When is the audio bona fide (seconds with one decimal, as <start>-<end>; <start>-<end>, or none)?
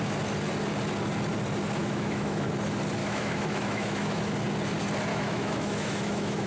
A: 0.0-1.8; 2.5-3.0; 4.3-5.1